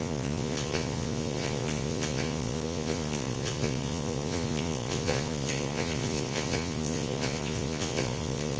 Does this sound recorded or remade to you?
remade